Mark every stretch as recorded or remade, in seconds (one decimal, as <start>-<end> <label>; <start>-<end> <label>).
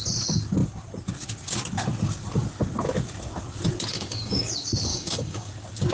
0.0-3.9 recorded; 3.9-4.5 remade; 4.5-4.9 recorded; 4.9-5.5 remade; 5.5-5.9 recorded